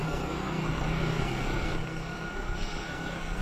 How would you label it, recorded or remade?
remade